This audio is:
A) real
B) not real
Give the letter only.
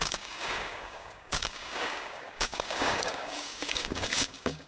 B